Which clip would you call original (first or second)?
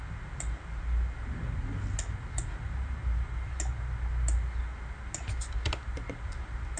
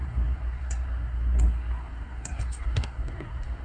first